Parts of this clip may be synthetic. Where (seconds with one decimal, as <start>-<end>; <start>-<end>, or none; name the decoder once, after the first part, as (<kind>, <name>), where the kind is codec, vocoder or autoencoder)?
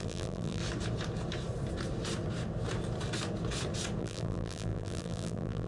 0.0-0.6 (vocoder, BigVGAN v2); 4.0-5.7